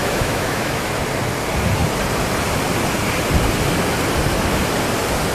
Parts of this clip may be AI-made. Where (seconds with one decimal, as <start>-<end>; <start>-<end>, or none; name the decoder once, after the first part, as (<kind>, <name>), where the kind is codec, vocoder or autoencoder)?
0.0-0.9 (autoencoder, DAC-VAE)